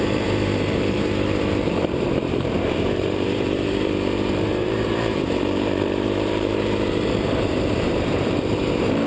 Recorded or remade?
remade